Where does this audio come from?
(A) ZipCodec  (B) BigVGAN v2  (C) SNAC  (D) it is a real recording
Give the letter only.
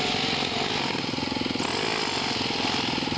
D